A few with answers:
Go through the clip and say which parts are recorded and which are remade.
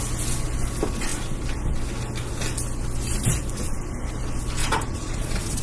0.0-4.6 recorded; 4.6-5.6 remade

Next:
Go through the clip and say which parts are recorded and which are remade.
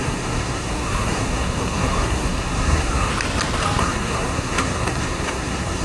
0.0-3.1 remade; 3.1-3.8 recorded; 3.8-5.8 remade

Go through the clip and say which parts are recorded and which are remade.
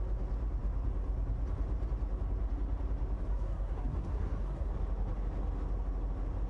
0.0-3.3 recorded; 3.3-4.7 remade; 4.7-6.5 recorded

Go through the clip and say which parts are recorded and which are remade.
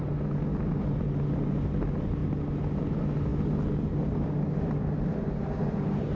0.0-6.2 recorded